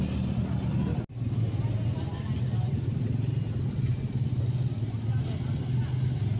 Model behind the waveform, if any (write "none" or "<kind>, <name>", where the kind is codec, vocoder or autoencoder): none